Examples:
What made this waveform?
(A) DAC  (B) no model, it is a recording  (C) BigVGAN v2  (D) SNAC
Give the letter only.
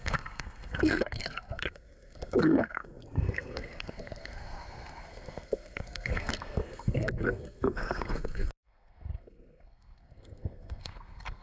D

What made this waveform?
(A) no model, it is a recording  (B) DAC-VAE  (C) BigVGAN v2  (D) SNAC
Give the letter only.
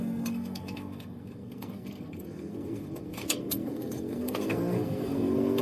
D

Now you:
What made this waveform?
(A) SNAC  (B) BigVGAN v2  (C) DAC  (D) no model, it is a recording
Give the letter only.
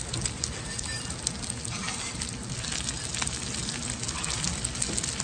D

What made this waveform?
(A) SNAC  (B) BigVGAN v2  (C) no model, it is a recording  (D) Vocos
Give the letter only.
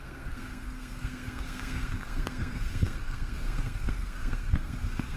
A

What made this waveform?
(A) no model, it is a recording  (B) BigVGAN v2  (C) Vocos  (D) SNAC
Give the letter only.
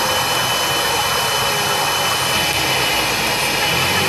A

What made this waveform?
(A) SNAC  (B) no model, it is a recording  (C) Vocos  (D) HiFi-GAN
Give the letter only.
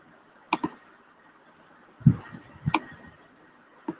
B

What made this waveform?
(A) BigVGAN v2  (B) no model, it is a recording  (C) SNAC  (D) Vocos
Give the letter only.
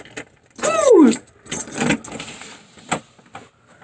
B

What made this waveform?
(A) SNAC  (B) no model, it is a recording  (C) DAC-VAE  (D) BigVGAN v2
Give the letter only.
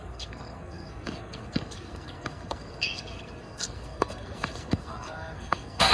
A